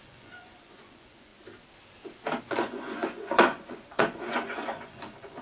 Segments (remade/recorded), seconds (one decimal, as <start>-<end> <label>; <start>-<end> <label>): 0.0-1.3 remade; 1.3-2.4 recorded; 2.4-5.4 remade